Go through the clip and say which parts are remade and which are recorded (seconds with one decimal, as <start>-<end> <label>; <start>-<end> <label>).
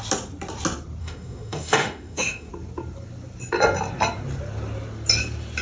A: 0.0-1.0 recorded; 1.0-2.5 remade; 2.5-5.6 recorded